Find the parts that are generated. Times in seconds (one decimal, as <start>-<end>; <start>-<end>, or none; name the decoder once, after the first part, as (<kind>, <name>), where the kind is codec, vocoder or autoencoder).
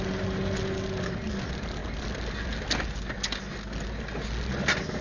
none